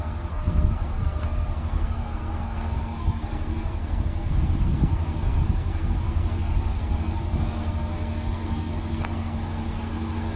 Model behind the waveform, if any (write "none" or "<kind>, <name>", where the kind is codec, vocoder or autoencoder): codec, SNAC